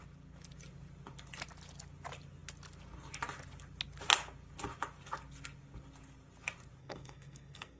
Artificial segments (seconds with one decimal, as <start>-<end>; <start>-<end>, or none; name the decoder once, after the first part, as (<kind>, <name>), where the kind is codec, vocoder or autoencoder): 6.8-7.8 (codec, SNAC)